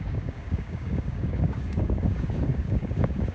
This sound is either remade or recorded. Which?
remade